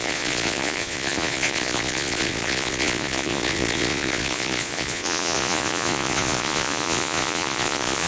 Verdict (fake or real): fake